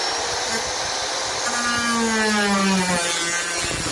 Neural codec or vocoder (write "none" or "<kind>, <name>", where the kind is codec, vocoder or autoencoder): none